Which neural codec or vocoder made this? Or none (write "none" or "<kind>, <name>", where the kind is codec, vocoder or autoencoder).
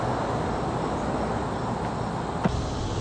none